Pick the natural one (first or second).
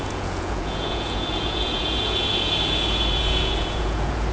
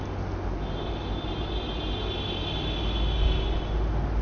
second